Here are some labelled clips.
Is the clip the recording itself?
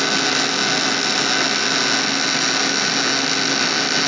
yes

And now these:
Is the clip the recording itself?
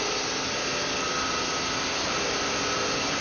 yes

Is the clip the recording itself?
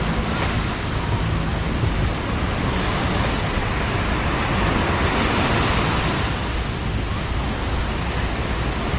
yes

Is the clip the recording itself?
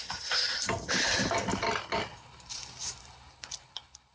yes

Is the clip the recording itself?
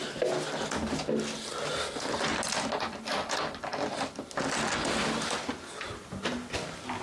yes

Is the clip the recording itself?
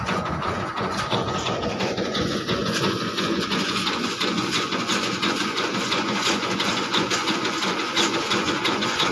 no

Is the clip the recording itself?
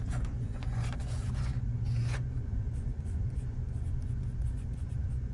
no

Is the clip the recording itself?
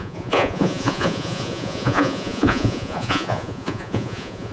no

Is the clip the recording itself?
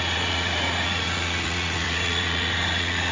no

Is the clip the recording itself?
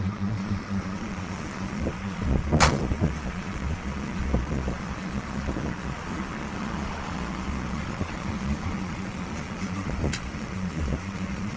no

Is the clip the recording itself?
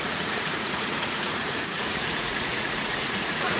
no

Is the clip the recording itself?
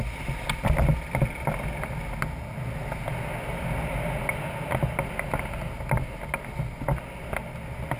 yes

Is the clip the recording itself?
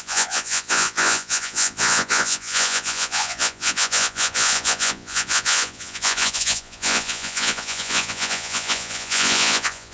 no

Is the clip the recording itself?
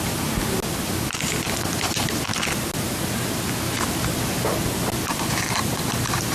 yes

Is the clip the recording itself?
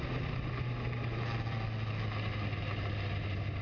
yes